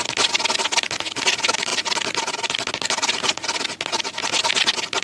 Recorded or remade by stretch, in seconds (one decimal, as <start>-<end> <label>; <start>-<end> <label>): 0.0-5.0 recorded